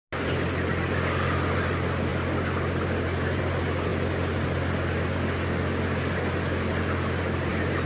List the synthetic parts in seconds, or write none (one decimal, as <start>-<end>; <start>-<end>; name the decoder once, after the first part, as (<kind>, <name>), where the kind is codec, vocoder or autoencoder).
none

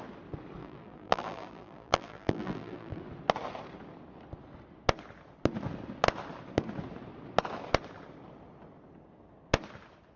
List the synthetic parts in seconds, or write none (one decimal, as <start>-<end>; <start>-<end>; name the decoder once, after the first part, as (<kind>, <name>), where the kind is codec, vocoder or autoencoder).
0.6-3.0 (vocoder, BigVGAN v2)